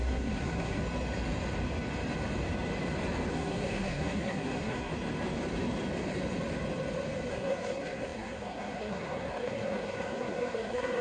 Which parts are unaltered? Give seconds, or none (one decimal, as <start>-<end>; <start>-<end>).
0.8-3.3; 4.9-7.3